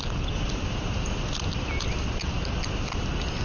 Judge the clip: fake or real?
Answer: real